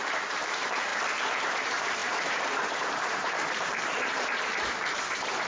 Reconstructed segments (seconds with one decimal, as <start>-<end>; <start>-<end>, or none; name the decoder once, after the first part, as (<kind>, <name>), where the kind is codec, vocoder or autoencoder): 0.0-0.9 (vocoder, BigVGAN v2); 1.4-5.5